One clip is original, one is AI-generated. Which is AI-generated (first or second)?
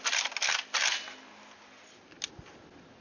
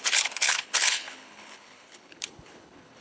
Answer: second